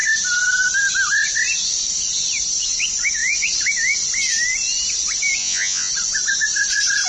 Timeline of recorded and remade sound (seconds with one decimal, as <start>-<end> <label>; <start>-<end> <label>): 0.0-5.4 recorded; 5.4-5.9 remade; 5.9-7.1 recorded

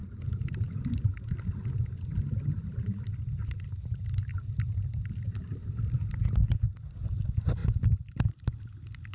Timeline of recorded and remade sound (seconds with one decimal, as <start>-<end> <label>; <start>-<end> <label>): 0.0-0.7 remade; 0.7-7.6 recorded; 7.6-8.3 remade; 8.3-9.1 recorded

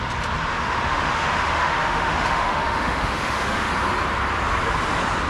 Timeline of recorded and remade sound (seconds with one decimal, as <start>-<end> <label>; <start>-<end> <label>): 0.0-0.5 recorded; 0.5-3.7 remade; 3.7-5.3 recorded

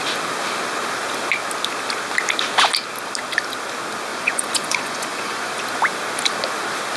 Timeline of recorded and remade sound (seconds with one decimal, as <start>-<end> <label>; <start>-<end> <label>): 0.0-4.1 recorded; 4.1-5.5 remade; 5.5-7.0 recorded

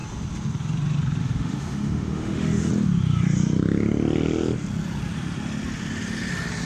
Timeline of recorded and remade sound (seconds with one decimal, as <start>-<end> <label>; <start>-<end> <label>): 0.0-1.2 recorded; 1.2-2.7 remade; 2.7-6.7 recorded

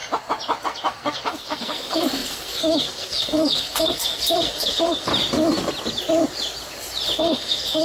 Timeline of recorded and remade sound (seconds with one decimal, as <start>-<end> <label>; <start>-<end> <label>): 0.0-0.6 recorded; 0.6-5.1 remade; 5.1-7.2 recorded; 7.2-7.8 remade

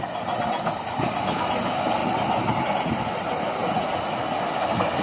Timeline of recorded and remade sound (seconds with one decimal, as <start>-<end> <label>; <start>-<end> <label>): 0.0-5.0 recorded

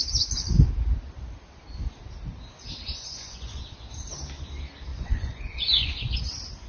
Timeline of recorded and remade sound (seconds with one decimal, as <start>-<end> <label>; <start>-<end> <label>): 0.0-2.8 recorded; 2.8-3.6 remade; 3.6-4.9 recorded; 4.9-6.2 remade; 6.2-6.7 recorded